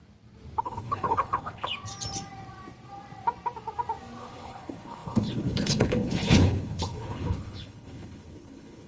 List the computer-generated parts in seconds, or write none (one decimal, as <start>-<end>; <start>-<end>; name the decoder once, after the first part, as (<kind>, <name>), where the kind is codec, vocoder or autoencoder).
0.6-1.7 (codec, HILCodec); 4.2-8.9